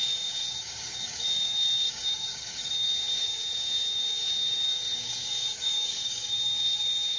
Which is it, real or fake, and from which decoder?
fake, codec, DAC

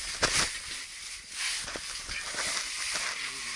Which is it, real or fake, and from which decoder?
real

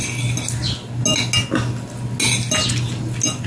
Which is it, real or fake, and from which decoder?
real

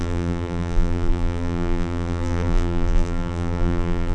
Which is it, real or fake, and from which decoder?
fake, vocoder, BigVGAN v2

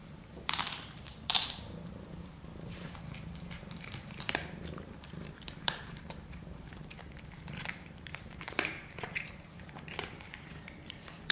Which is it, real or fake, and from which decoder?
fake, vocoder, BigVGAN v2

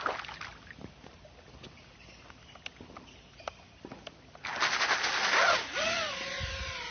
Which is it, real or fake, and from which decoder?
real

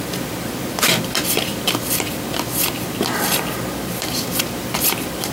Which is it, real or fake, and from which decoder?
fake, vocoder, BigVGAN v2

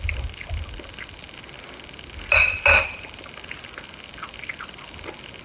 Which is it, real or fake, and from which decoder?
real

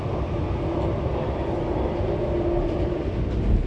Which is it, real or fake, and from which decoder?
real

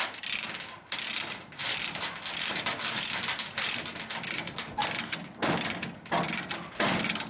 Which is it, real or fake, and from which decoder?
real